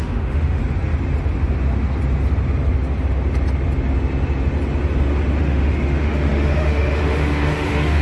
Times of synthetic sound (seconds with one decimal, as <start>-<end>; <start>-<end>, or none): 0.0-0.6; 5.4-8.0